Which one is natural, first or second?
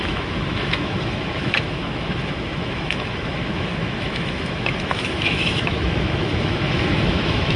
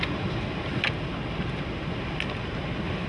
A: second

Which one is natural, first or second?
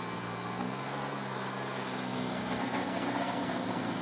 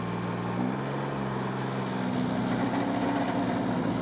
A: second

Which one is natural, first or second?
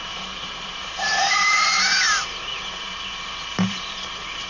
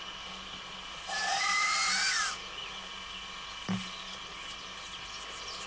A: second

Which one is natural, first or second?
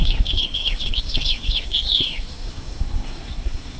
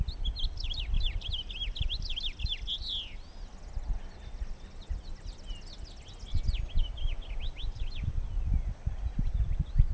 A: second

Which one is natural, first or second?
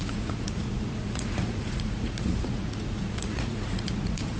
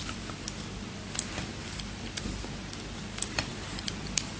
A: second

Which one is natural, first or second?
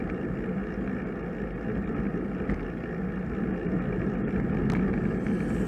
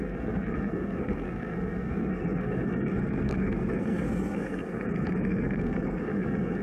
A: first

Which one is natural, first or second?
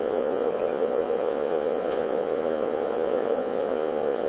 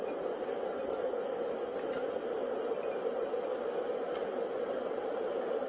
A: second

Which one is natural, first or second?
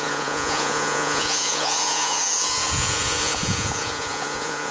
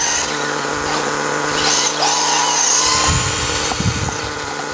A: second